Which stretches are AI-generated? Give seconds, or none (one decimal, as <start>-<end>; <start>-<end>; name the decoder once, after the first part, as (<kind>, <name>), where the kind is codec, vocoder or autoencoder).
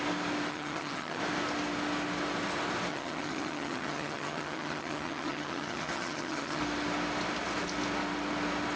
0.5-1.2 (vocoder, HiFi-GAN); 2.9-6.6